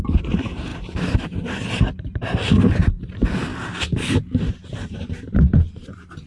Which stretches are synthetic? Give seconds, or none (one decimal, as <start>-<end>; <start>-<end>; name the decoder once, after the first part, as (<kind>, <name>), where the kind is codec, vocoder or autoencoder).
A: 0.0-3.5 (vocoder, BigVGAN v2); 4.1-6.3